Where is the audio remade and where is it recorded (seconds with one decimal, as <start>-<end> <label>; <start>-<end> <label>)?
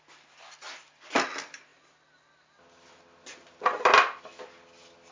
0.0-5.1 recorded